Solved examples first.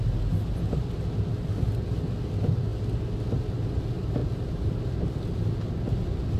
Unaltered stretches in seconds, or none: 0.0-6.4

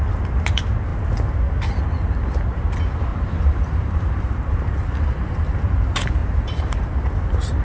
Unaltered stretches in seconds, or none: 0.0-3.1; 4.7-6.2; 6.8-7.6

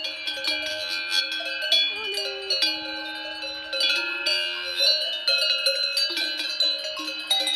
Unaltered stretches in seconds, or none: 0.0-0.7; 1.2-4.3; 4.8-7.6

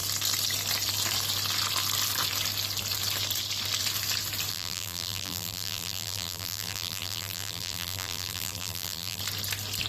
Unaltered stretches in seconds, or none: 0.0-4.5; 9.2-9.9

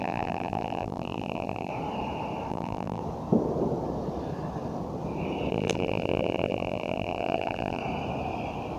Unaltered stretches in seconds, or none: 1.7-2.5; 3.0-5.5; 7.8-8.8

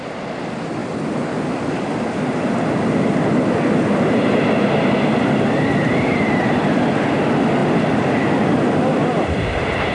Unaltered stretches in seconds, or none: 0.0-7.6; 8.5-9.0

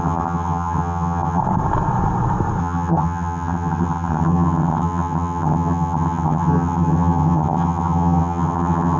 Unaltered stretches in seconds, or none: 1.4-2.6

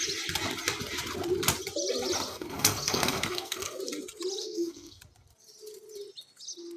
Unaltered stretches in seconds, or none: 0.0-2.3; 3.8-4.4; 5.0-6.8